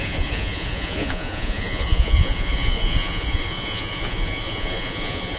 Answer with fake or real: fake